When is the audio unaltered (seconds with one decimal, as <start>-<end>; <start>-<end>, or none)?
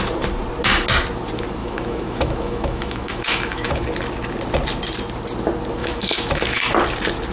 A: 0.0-1.6; 3.7-5.8; 6.6-7.3